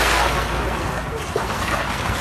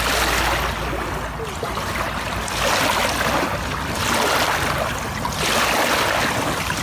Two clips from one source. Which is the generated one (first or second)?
first